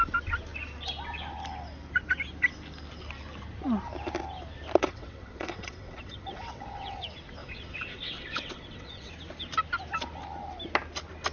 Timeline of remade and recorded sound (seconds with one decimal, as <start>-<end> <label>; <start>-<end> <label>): 0.0-4.8 recorded; 4.8-7.0 remade; 7.0-7.4 recorded; 7.4-9.1 remade; 9.1-11.3 recorded